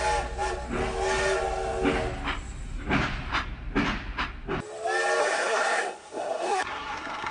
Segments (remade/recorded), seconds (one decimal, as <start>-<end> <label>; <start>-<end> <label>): 0.0-5.2 recorded; 5.2-7.3 remade